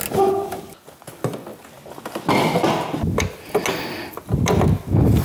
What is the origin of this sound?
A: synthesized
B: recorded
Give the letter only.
B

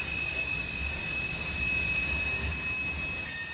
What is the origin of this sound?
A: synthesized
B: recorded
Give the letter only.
B